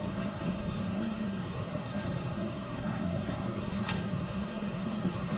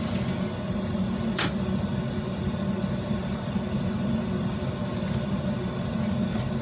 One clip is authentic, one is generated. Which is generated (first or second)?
first